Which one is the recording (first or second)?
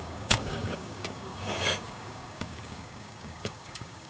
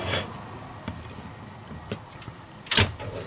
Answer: second